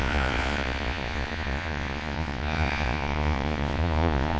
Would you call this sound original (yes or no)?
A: no